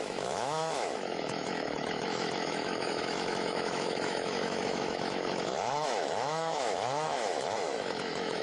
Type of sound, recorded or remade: remade